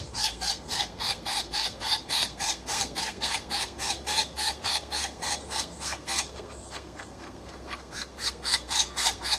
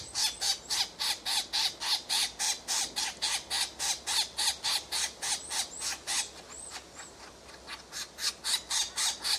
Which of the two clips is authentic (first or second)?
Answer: second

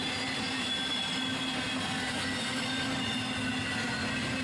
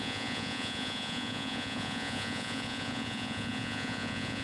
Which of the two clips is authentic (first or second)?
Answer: first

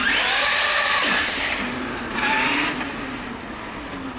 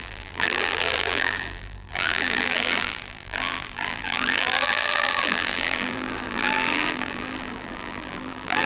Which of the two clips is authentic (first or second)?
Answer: first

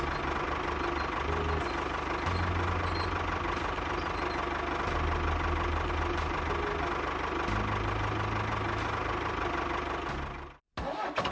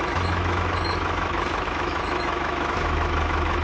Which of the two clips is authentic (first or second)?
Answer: first